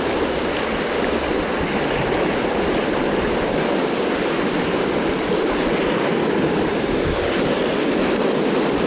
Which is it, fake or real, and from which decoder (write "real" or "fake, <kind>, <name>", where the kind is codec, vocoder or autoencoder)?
real